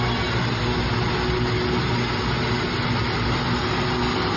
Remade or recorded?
recorded